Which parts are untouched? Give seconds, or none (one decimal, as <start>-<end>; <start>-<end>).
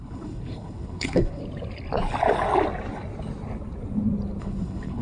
1.4-4.4